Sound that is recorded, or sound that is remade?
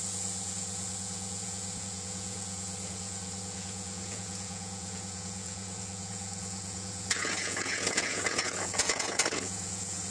remade